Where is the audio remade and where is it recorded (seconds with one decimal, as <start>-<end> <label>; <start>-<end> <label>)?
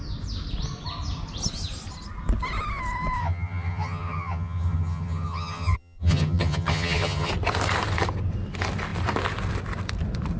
0.0-3.2 recorded; 3.2-7.3 remade; 7.3-10.4 recorded